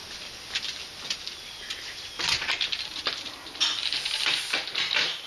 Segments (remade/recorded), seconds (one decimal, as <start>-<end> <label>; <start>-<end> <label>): 0.0-5.3 recorded